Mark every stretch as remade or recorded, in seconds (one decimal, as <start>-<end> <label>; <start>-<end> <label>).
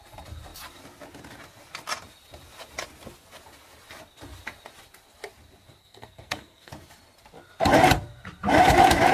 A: 0.0-5.8 recorded; 5.8-6.7 remade; 6.7-9.1 recorded